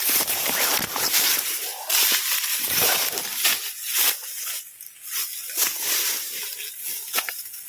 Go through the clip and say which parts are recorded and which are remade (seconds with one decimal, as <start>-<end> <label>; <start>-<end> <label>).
0.0-1.7 remade; 1.7-2.6 recorded; 2.6-4.2 remade; 4.2-7.2 recorded; 7.2-7.7 remade